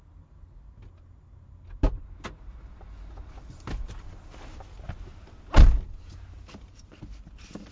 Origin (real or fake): real